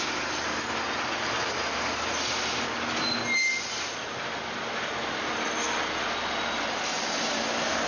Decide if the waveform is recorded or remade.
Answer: recorded